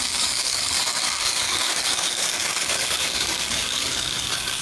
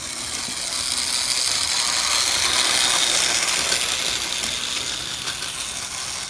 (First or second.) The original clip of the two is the second